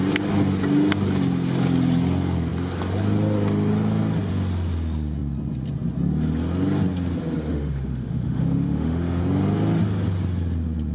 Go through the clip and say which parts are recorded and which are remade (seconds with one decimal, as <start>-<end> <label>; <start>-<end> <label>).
0.0-7.5 recorded; 7.5-9.2 remade; 9.2-10.9 recorded